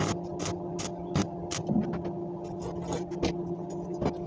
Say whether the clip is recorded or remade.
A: recorded